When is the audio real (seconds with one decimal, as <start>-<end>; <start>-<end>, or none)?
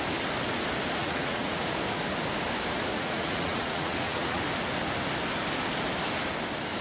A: 0.0-1.0; 1.8-2.9; 4.4-6.8